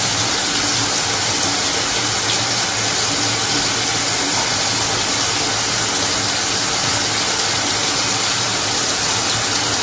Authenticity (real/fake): real